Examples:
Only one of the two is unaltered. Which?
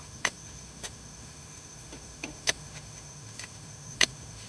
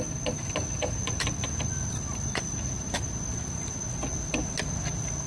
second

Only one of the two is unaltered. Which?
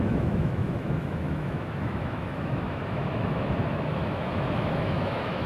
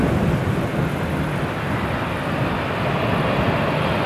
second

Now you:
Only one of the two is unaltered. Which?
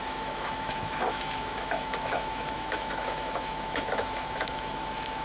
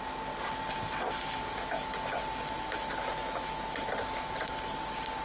second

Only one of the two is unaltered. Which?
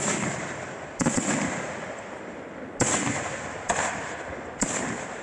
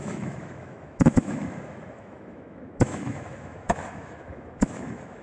first